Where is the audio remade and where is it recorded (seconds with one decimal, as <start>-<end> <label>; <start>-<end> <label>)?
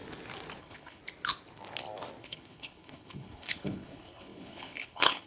0.0-0.6 recorded; 0.6-1.0 remade; 1.0-2.2 recorded; 2.2-5.3 remade